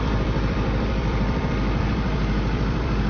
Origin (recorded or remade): remade